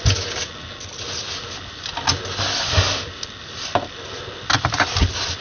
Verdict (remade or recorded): recorded